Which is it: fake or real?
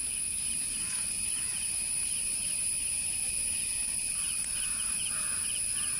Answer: real